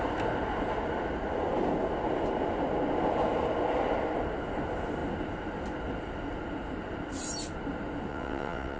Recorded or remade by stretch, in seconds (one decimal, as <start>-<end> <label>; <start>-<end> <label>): 0.0-8.1 recorded; 8.1-8.8 remade